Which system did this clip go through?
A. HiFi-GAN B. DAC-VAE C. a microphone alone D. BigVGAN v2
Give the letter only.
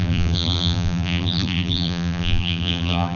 D